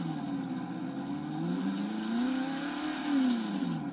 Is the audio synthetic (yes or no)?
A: no